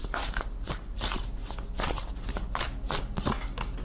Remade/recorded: recorded